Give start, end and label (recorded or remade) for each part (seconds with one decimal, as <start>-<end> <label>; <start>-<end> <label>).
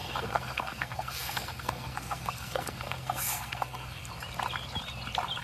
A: 0.0-4.1 remade; 4.1-5.4 recorded